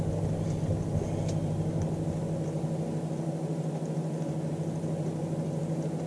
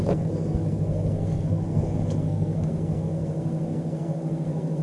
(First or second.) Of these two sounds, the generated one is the second